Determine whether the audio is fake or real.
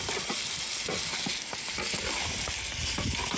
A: real